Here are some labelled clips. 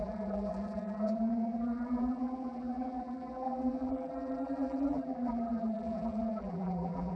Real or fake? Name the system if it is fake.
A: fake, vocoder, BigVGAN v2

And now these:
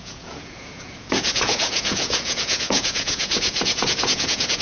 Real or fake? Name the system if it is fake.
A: fake, vocoder, Vocos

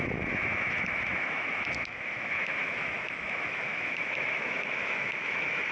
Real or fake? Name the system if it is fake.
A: fake, autoencoder, DAC-VAE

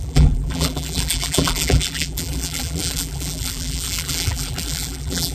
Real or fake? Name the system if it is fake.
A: fake, vocoder, BigVGAN v2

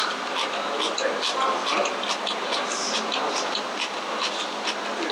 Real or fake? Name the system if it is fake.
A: real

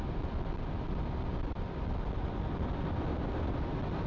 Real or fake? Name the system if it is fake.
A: real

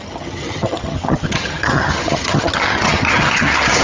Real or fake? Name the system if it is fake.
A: fake, vocoder, HiFi-GAN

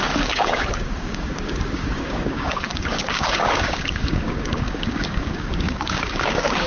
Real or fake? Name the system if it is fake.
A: fake, codec, DAC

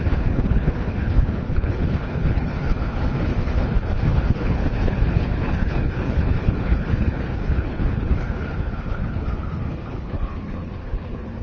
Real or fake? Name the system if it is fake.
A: fake, codec, HILCodec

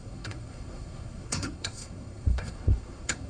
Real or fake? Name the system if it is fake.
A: fake, codec, SNAC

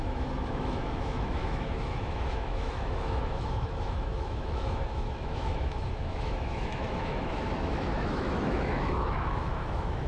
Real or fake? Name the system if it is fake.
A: fake, autoencoder, DAC-VAE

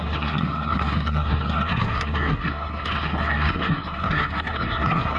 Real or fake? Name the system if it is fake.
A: fake, codec, SNAC